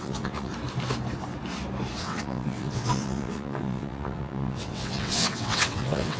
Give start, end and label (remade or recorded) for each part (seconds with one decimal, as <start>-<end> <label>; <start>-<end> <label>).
0.0-0.5 remade; 0.5-2.0 recorded; 2.0-6.2 remade